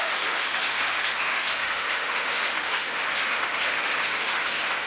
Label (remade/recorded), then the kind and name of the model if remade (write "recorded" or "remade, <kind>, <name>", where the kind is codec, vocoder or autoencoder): remade, autoencoder, DAC-VAE